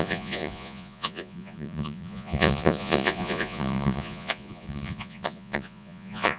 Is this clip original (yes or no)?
no